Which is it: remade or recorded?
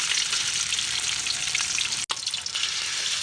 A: recorded